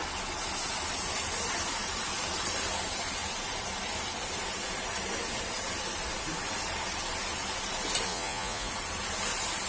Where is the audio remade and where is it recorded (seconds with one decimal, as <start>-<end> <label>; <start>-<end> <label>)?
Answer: 0.0-8.1 recorded; 8.1-8.7 remade; 8.7-9.7 recorded

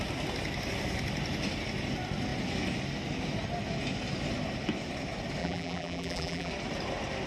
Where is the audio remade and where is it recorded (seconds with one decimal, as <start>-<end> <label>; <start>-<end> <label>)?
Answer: 0.0-5.4 recorded; 5.4-6.5 remade; 6.5-7.3 recorded

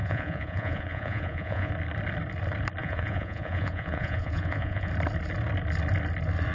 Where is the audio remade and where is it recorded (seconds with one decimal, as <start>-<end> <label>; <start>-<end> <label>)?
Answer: 0.0-1.7 remade; 1.7-2.8 recorded; 2.8-4.9 remade; 4.9-6.5 recorded

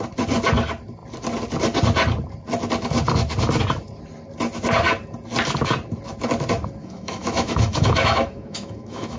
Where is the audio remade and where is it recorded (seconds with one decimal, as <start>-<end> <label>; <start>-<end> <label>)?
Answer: 0.0-6.8 recorded; 6.8-9.2 remade

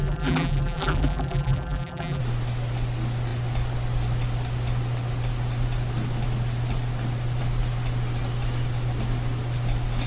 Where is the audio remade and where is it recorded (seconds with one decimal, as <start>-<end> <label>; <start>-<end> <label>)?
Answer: 0.0-2.2 remade; 2.2-10.1 recorded

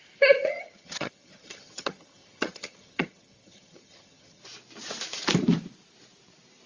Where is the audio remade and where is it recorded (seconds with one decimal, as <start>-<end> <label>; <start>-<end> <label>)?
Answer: 0.0-0.4 recorded; 0.4-4.4 remade; 4.4-6.7 recorded

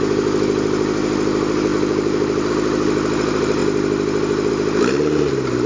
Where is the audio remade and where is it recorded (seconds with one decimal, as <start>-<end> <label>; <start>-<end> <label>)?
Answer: 0.0-1.7 recorded; 1.7-2.5 remade; 2.5-5.7 recorded

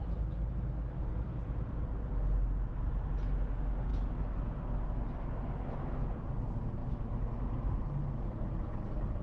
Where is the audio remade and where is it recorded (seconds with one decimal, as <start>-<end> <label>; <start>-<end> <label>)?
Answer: 0.0-9.2 recorded